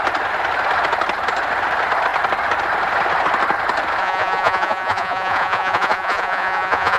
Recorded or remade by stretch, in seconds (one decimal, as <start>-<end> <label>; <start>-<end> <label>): 0.0-4.0 recorded; 4.0-7.0 remade

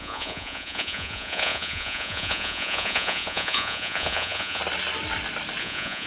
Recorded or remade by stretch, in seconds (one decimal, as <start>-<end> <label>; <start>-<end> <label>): 0.0-4.6 remade; 4.6-5.6 recorded; 5.6-6.1 remade